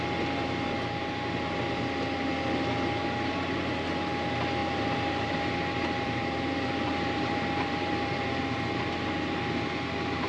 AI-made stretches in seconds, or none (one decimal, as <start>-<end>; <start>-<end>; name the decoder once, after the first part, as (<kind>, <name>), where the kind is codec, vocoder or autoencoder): 4.6-8.4 (vocoder, BigVGAN v2)